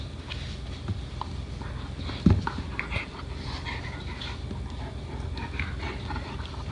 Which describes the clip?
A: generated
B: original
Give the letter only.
B